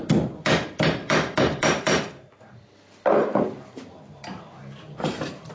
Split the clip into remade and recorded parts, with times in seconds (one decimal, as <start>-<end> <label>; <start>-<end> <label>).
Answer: 0.0-1.0 recorded; 1.0-2.1 remade; 2.1-3.2 recorded; 3.2-3.9 remade; 3.9-4.6 recorded; 4.6-5.5 remade